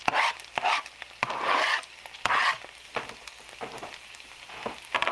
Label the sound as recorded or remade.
recorded